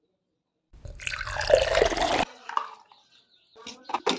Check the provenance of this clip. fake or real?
real